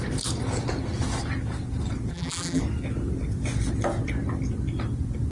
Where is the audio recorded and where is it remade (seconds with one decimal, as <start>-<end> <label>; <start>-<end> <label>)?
0.0-2.1 recorded; 2.1-2.6 remade; 2.6-5.3 recorded